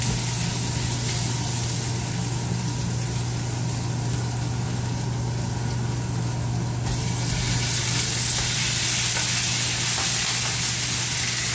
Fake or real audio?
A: real